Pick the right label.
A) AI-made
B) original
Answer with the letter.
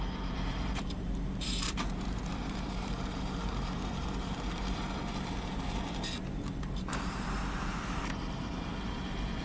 A